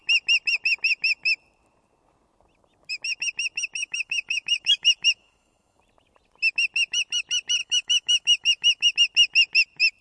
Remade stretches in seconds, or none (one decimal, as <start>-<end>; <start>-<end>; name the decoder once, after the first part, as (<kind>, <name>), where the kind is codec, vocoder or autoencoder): 3.8-5.8 (autoencoder, DAC-VAE); 7.6-8.9